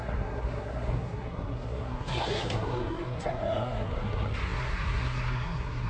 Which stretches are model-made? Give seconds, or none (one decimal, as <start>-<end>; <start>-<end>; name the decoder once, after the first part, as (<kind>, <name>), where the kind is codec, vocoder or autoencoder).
0.0-5.9 (codec, SNAC)